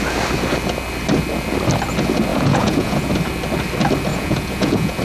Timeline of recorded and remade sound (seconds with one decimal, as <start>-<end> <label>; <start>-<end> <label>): 0.0-2.3 recorded; 2.3-3.1 remade; 3.1-4.1 recorded; 4.1-5.0 remade